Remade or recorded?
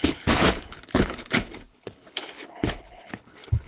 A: remade